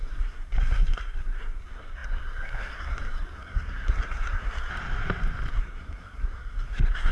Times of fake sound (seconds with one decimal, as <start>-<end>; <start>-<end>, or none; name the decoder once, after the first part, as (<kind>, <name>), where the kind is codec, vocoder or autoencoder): 0.0-4.7 (codec, SNAC); 5.5-7.1